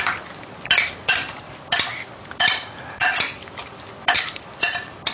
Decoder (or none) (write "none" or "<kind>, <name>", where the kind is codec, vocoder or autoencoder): none